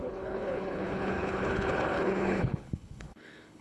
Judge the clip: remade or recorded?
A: remade